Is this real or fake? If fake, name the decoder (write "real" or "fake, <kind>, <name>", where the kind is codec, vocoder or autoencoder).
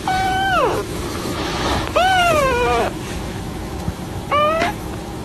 fake, autoencoder, DAC-VAE